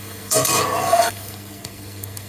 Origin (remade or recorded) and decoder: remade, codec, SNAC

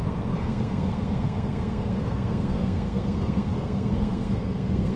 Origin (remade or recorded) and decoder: remade, codec, SNAC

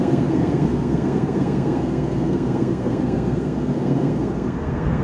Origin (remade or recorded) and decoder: remade, codec, SNAC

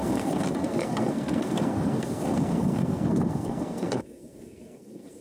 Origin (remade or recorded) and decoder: remade, codec, SNAC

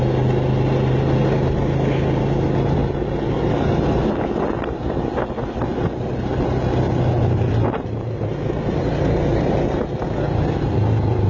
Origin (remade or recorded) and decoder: recorded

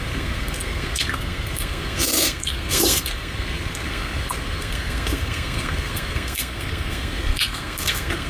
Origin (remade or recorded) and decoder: remade, codec, SNAC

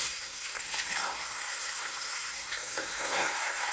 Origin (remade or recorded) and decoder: remade, codec, SNAC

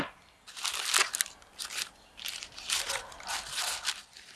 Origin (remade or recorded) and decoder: recorded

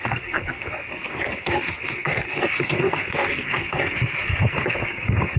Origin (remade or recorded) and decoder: remade, codec, SNAC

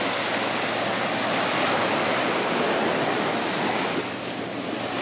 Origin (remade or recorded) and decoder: recorded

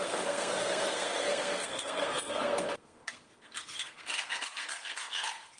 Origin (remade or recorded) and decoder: remade, codec, SNAC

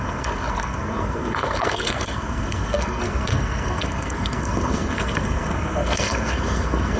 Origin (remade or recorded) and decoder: remade, codec, SNAC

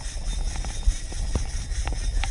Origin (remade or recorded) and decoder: recorded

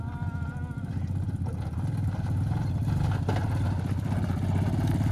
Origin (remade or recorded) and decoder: recorded